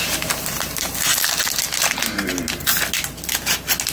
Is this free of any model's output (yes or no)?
yes